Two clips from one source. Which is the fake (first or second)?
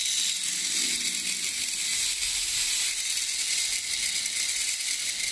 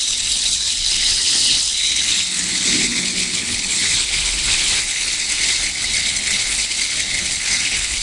second